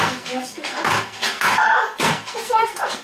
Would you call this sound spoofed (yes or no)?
yes